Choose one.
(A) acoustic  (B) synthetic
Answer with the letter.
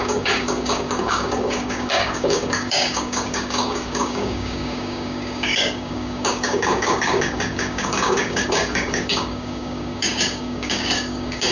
B